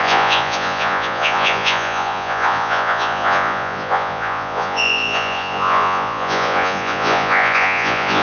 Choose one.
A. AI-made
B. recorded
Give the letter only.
A